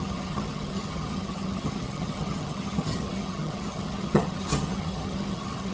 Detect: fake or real fake